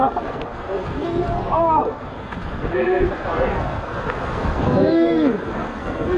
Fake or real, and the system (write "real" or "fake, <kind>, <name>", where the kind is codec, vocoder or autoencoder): fake, codec, SNAC